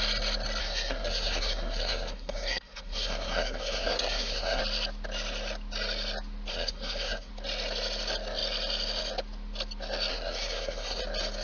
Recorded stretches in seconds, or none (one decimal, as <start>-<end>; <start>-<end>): 0.0-0.6; 4.6-6.5; 7.3-10.1; 11.0-11.4